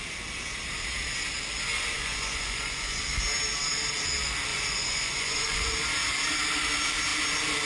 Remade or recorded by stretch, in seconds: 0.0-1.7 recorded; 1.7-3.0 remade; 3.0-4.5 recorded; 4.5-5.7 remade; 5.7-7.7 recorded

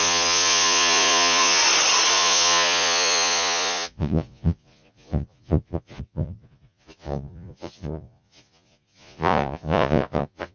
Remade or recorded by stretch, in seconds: 0.0-1.6 remade; 1.6-2.1 recorded; 2.1-10.5 remade

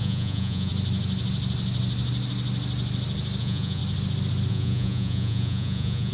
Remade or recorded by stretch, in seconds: 0.0-0.7 remade; 0.7-3.4 recorded; 3.4-3.8 remade; 3.8-4.5 recorded; 4.5-6.1 remade